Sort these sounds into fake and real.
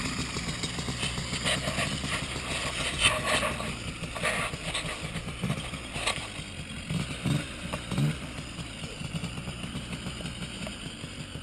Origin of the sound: real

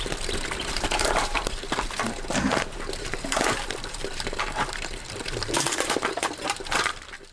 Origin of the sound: fake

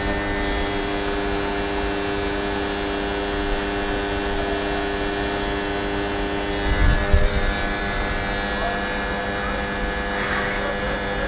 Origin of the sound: real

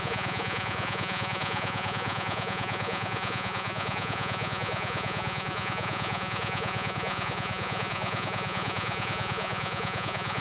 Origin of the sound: fake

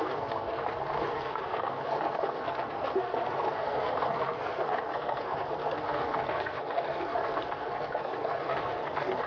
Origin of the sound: fake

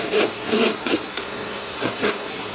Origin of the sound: fake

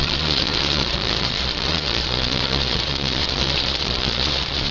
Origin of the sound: fake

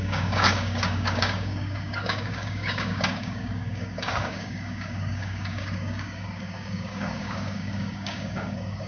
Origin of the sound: fake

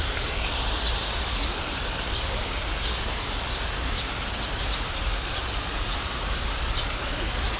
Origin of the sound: real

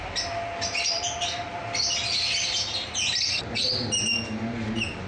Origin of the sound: real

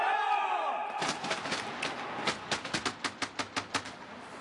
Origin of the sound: real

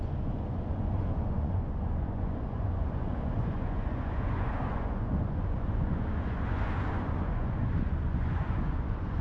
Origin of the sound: fake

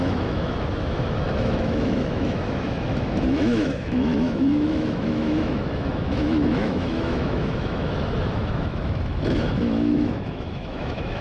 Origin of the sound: fake